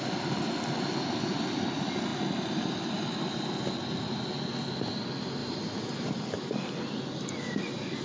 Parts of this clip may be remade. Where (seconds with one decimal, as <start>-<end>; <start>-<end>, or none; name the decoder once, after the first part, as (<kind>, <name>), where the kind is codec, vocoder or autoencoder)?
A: none